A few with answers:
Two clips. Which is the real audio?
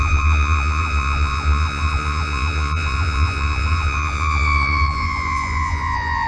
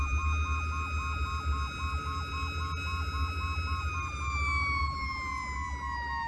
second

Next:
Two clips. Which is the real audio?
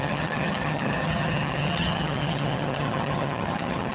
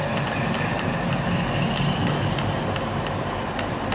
second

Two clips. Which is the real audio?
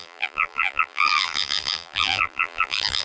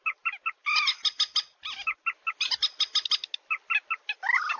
second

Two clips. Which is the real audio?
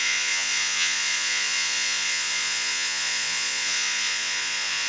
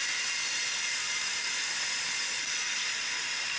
second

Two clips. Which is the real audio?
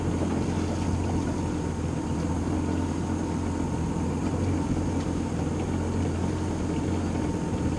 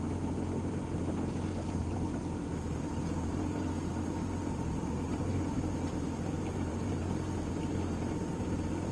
first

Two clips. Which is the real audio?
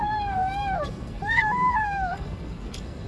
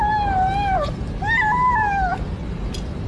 second